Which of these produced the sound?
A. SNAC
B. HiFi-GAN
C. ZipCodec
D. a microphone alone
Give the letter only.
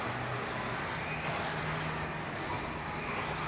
D